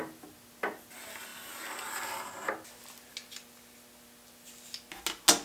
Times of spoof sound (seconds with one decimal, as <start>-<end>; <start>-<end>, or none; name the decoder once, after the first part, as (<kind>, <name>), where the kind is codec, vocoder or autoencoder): none